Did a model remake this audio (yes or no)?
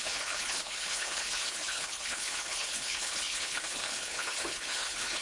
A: yes